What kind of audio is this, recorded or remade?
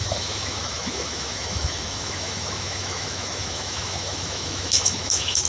remade